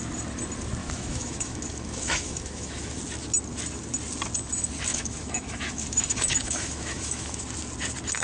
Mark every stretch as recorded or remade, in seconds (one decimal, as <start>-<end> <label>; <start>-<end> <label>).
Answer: 0.0-0.8 recorded; 0.8-3.0 remade; 3.0-4.9 recorded; 4.9-7.4 remade; 7.4-8.2 recorded